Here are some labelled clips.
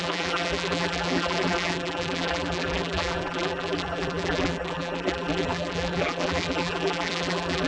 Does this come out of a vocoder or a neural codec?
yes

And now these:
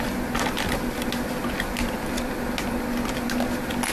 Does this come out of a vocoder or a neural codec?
no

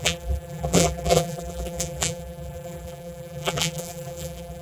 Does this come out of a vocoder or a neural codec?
yes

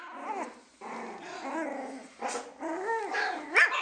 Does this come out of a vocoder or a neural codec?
no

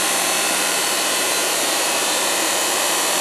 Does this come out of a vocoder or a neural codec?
yes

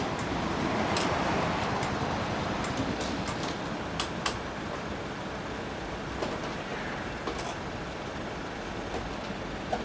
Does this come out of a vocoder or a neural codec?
no